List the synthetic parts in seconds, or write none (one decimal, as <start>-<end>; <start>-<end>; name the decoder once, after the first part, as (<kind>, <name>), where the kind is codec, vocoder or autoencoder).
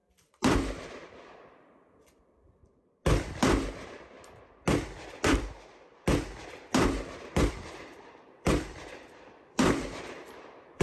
0.0-2.6 (vocoder, BigVGAN v2); 7.5-10.8